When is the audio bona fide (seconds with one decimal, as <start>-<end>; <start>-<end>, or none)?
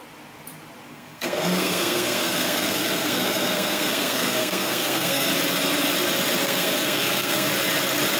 0.0-0.9; 5.3-6.4; 7.5-8.2